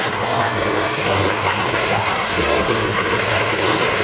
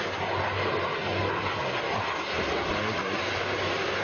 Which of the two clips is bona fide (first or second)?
second